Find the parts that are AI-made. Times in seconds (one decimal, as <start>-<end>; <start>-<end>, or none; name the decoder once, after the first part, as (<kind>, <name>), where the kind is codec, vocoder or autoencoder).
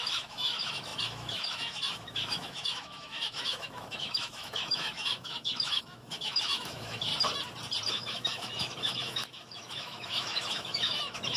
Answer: 0.0-7.1 (autoencoder, DAC-VAE); 7.9-11.4